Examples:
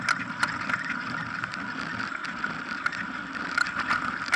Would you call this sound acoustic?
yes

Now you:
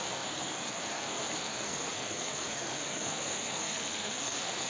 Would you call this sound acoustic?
no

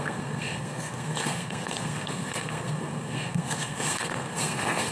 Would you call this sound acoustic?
no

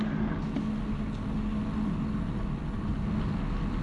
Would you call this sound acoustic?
yes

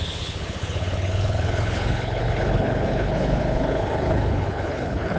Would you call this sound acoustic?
no